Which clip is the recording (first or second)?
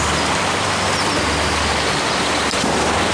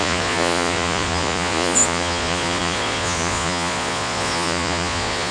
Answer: first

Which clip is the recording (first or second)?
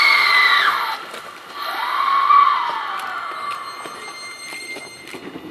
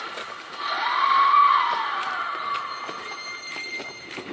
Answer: first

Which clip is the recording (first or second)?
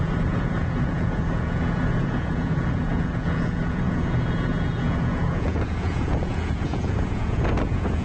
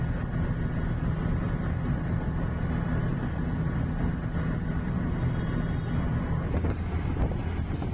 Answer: second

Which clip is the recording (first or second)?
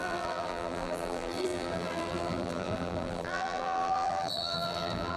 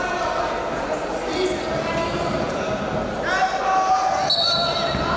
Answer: second